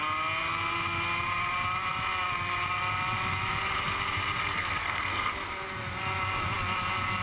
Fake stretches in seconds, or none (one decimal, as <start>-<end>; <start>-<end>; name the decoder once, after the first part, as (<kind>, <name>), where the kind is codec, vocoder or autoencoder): 4.4-5.3 (codec, SNAC)